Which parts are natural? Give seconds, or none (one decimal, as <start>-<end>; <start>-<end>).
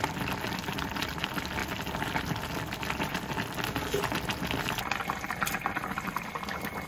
0.0-6.9